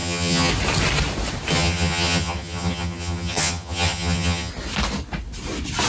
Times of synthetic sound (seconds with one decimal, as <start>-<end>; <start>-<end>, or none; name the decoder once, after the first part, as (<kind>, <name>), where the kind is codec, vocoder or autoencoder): 0.0-0.5 (vocoder, HiFi-GAN); 1.5-4.5